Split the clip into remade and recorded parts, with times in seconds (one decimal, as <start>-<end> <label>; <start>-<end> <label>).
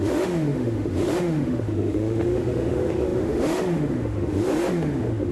0.0-5.3 remade